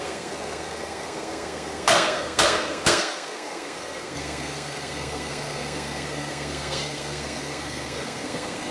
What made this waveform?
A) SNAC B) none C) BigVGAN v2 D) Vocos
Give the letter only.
A